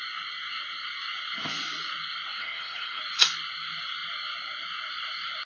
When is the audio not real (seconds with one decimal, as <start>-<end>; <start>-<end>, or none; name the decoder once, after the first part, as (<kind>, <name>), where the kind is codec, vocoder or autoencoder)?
2.4-3.0 (codec, HILCodec)

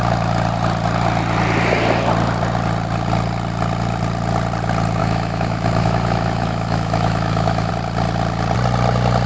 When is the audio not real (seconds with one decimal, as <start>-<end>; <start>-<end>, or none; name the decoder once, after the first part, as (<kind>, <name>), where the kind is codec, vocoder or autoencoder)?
5.0-7.7 (autoencoder, DAC-VAE)

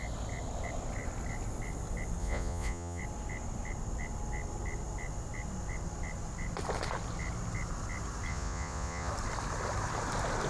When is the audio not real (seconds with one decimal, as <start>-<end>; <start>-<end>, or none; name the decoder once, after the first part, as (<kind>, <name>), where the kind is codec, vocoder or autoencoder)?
2.2-3.0 (vocoder, Vocos); 8.3-9.1

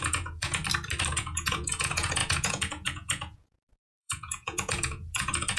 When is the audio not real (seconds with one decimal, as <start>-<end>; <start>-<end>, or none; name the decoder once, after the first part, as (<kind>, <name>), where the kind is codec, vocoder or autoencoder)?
0.0-0.6 (vocoder, Vocos); 1.1-5.6

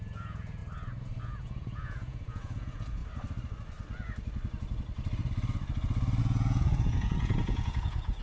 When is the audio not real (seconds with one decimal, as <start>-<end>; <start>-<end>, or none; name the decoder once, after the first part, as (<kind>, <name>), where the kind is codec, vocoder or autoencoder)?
0.0-0.6 (vocoder, Vocos); 1.2-3.0; 6.2-8.2

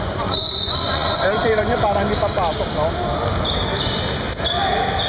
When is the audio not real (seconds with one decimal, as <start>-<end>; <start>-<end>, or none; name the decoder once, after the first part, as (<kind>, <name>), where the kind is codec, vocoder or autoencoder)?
0.0-1.7 (vocoder, Vocos)

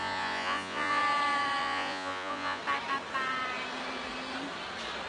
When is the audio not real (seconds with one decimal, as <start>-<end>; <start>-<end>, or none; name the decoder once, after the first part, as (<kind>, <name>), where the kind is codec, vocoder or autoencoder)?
0.0-1.0 (vocoder, Vocos); 1.6-2.6